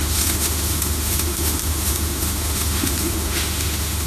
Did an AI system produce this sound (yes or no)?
yes